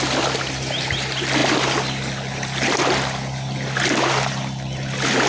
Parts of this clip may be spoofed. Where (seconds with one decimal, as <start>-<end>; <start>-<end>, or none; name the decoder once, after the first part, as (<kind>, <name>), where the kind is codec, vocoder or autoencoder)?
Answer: none